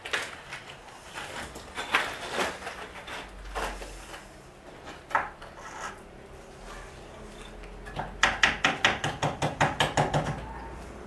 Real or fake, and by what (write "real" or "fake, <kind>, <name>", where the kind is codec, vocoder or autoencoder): real